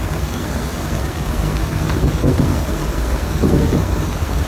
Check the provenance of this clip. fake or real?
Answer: fake